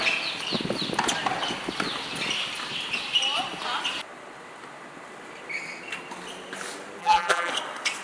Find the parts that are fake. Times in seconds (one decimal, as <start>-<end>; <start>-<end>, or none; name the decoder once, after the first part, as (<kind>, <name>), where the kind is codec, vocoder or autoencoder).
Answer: 7.0-7.5 (vocoder, BigVGAN v2)